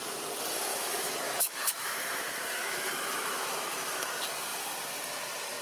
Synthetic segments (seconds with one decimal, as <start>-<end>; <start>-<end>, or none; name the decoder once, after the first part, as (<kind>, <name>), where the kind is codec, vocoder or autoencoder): 0.7-4.1 (autoencoder, DAC-VAE)